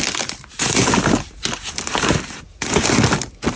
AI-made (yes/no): no